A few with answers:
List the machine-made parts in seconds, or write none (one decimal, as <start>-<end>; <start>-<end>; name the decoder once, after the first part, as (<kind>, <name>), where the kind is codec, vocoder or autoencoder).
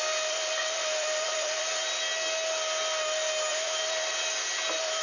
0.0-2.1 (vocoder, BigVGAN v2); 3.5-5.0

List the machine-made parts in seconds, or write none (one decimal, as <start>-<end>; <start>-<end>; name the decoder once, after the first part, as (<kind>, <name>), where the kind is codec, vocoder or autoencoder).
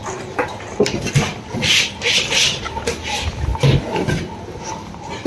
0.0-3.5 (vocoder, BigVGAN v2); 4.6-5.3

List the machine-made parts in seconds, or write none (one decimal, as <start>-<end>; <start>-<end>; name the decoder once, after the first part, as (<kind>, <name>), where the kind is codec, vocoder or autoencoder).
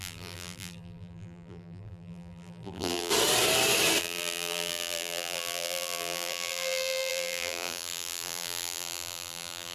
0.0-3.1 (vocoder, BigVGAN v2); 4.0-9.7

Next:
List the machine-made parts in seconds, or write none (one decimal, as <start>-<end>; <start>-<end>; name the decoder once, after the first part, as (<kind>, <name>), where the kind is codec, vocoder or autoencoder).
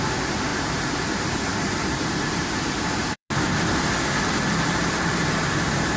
0.5-3.3 (vocoder, BigVGAN v2)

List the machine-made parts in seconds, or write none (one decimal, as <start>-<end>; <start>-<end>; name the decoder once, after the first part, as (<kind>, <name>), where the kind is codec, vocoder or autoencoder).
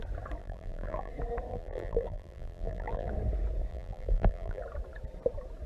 0.4-1.1 (vocoder, BigVGAN v2); 1.5-3.1; 3.7-4.6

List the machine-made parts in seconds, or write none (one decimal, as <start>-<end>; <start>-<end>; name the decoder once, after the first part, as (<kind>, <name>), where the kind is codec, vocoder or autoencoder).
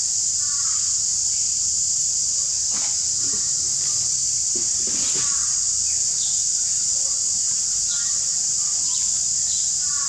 1.2-2.5 (vocoder, BigVGAN v2); 4.2-4.9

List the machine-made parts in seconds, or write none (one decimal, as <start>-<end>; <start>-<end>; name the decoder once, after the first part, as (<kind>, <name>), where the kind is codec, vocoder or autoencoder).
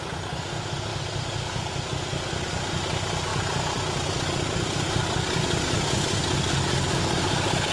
0.9-1.8 (vocoder, BigVGAN v2); 3.3-5.4